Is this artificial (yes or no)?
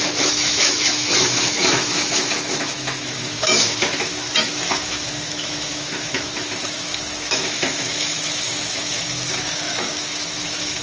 yes